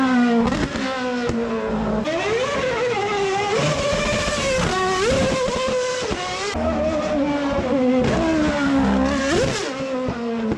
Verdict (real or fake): real